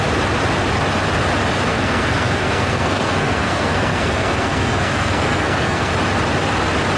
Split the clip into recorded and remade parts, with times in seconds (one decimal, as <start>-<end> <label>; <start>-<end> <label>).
0.0-1.7 recorded; 1.7-5.9 remade; 5.9-7.0 recorded